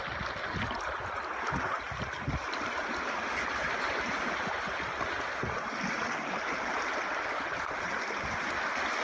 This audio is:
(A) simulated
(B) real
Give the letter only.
B